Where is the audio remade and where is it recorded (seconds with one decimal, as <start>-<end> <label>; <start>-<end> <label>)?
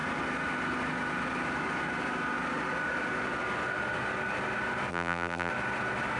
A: 0.0-4.9 recorded; 4.9-5.5 remade; 5.5-6.2 recorded